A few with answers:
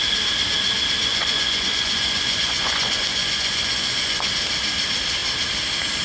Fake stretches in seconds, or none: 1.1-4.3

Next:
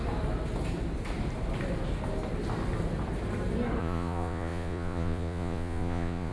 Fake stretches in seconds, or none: 3.8-6.3